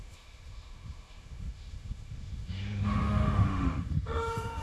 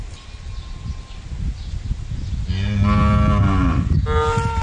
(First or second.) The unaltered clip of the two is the second